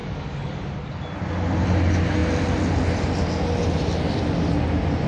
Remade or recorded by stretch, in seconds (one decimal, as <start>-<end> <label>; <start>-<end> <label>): 0.0-0.8 remade; 0.8-5.1 recorded